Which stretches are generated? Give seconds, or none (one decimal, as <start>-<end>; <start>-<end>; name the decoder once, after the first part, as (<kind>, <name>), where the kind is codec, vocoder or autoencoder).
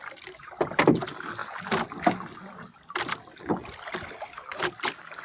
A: none